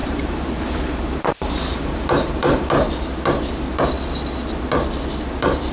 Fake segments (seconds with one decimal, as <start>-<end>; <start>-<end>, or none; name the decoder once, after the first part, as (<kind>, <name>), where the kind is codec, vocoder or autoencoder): 0.0-2.7 (vocoder, BigVGAN v2)